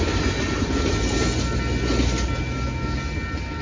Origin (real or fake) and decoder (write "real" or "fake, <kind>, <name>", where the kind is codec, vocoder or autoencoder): real